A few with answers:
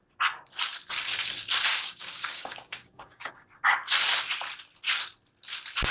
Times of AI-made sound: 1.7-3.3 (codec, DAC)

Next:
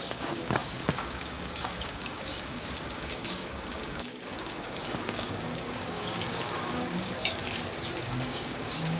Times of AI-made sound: 0.0-7.4 (codec, DAC); 8.0-9.0

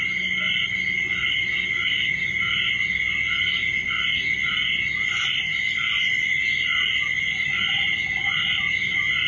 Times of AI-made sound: none

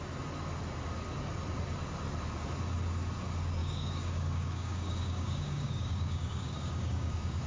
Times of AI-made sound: 3.6-7.5 (codec, DAC)